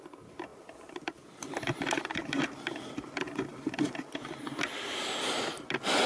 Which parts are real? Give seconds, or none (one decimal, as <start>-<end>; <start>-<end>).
0.0-0.5; 2.0-6.1

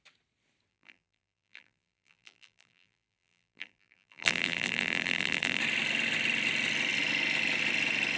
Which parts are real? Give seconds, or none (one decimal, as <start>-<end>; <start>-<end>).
0.0-0.7; 5.6-8.2

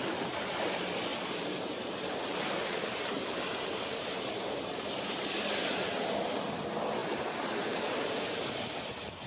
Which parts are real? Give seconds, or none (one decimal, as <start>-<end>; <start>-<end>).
0.0-1.1; 5.4-7.0

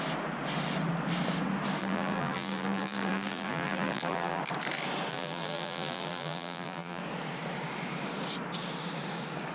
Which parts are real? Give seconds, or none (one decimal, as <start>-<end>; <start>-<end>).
0.0-1.8; 4.4-5.1; 7.0-9.5